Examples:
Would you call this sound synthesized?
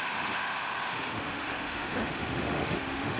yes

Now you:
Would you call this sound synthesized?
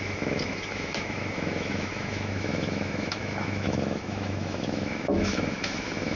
yes